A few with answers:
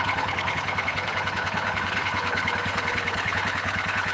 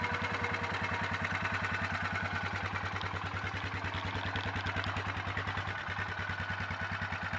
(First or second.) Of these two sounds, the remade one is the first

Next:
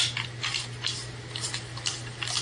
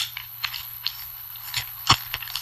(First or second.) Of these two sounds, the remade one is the second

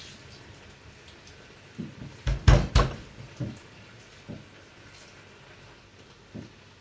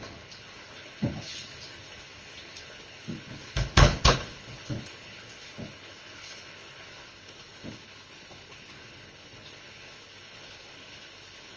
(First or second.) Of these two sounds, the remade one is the second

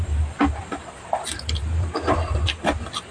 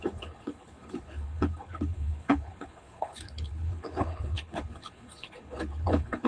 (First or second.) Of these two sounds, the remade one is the second